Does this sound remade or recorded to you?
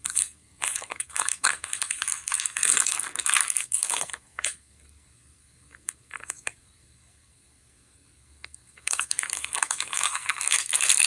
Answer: remade